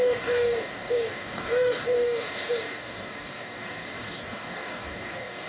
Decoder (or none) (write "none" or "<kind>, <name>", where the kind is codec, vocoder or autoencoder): codec, DAC